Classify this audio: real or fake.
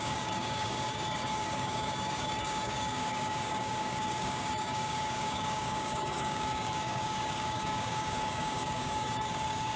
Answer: fake